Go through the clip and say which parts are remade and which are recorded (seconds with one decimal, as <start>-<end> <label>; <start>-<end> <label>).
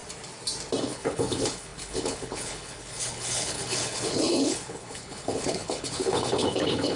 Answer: 0.0-0.8 recorded; 0.8-7.0 remade